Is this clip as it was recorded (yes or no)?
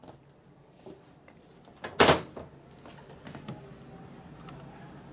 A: yes